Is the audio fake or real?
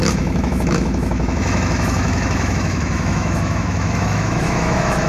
fake